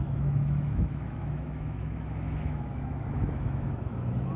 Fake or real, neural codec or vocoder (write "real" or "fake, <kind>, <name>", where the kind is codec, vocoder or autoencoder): fake, autoencoder, DAC-VAE